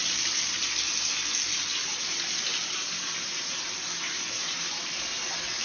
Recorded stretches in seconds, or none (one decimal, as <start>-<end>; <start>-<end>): 0.6-1.7; 5.1-5.6